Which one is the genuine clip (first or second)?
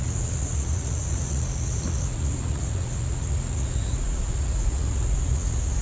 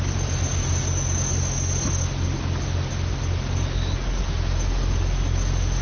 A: second